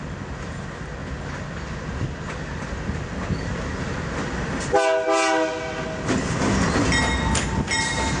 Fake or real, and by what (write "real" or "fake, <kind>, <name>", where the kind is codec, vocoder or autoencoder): real